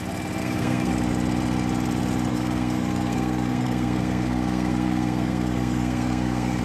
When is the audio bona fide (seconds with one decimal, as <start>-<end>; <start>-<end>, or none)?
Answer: 0.0-0.4; 0.9-2.3